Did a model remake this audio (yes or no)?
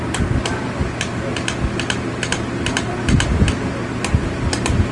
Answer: no